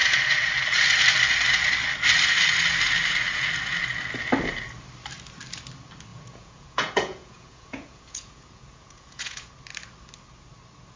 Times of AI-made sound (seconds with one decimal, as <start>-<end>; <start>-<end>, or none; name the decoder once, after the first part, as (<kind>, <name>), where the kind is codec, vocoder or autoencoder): 6.1-9.5 (vocoder, Vocos)